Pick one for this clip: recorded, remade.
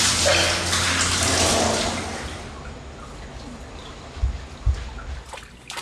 recorded